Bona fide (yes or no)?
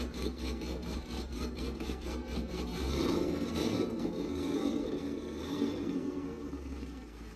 no